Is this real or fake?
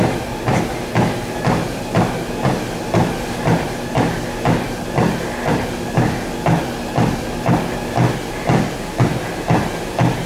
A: real